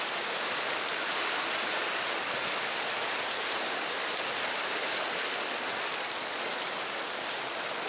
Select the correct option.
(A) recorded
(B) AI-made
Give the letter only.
A